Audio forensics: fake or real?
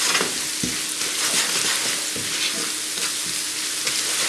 real